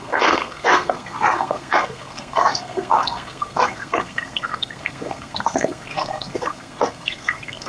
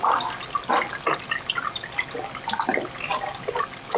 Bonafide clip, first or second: second